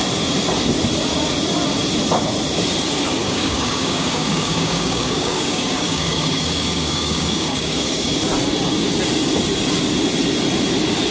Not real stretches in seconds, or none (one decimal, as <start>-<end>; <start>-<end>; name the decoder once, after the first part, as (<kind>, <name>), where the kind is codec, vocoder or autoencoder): 3.2-8.2 (codec, DAC)